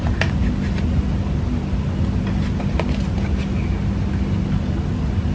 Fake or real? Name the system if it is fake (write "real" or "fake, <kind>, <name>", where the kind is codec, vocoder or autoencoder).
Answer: real